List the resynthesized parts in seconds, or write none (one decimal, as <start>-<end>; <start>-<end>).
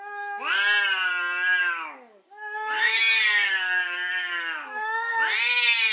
1.6-5.1